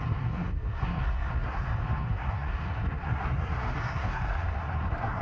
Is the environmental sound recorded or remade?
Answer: remade